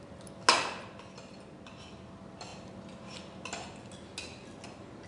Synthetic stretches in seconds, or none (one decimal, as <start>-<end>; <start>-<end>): none